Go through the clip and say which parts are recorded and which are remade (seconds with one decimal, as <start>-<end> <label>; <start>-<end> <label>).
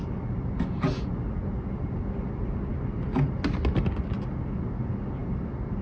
0.0-5.8 recorded